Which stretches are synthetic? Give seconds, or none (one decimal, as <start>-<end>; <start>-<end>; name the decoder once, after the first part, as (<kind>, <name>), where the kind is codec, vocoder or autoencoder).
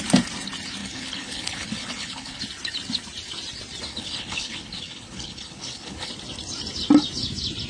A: 0.8-2.4 (codec, HILCodec); 3.9-6.1